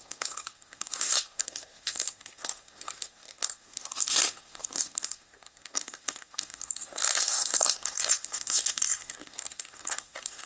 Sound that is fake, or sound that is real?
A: fake